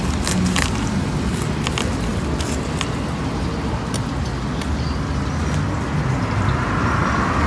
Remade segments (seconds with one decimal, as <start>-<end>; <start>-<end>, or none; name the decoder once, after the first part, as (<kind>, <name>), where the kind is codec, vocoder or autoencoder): none